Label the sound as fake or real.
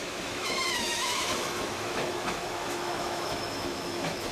fake